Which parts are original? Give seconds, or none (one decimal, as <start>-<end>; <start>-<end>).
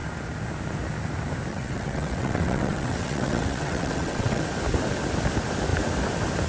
0.0-1.5; 4.4-6.5